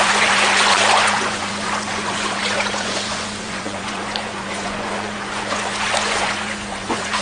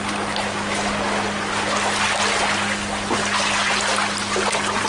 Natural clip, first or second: second